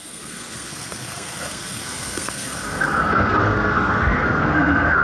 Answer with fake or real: fake